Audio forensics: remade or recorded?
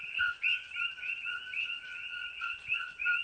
remade